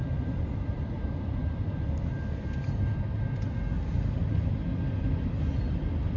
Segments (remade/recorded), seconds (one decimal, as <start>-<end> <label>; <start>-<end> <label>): 0.0-1.4 remade; 1.4-4.2 recorded; 4.2-6.2 remade

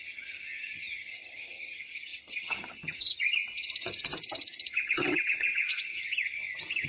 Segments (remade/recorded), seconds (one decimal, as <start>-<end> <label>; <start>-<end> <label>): 0.0-6.9 remade

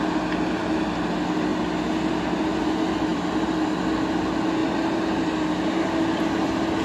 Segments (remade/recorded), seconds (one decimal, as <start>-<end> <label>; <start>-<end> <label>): 0.0-6.8 recorded

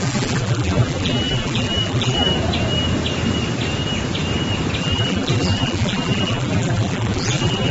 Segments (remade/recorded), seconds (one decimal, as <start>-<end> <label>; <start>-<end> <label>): 0.0-2.3 remade; 2.3-4.8 recorded; 4.8-7.7 remade

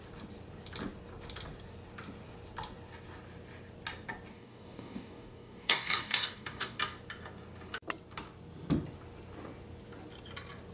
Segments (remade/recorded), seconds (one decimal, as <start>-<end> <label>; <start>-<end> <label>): 0.0-4.3 recorded; 4.3-6.8 remade; 6.8-10.7 recorded

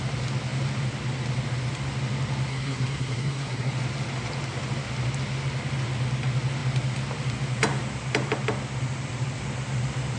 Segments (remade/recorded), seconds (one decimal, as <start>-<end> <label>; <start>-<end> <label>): 0.0-2.5 recorded; 2.5-3.7 remade; 3.7-10.2 recorded

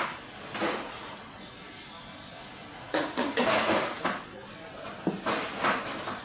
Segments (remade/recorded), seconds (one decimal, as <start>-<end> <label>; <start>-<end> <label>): 0.0-0.6 recorded; 0.6-1.5 remade; 1.5-2.6 recorded; 2.6-4.0 remade; 4.0-6.2 recorded